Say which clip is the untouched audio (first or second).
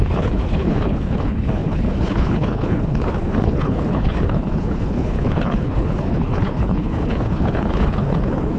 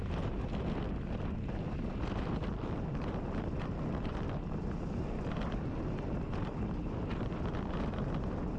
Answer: second